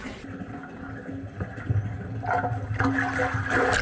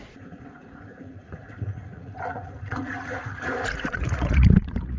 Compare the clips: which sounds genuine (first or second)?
first